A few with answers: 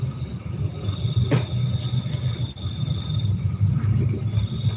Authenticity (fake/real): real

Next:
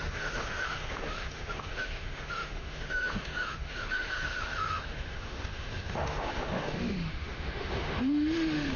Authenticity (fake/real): fake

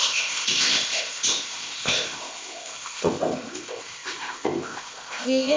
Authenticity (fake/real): fake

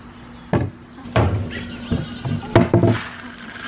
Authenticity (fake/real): real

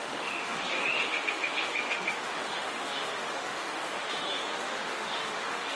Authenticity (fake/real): fake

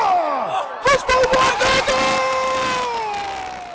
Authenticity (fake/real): real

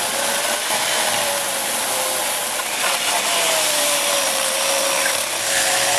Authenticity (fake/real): fake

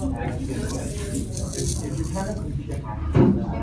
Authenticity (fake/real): real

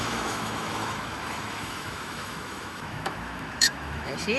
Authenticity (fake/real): fake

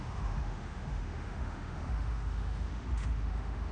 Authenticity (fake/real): fake